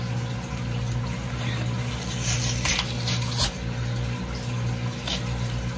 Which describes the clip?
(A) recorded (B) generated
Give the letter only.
A